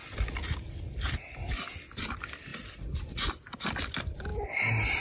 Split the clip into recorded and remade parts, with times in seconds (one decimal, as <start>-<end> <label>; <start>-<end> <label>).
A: 0.0-5.0 recorded